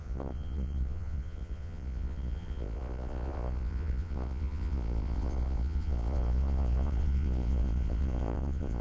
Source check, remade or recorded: remade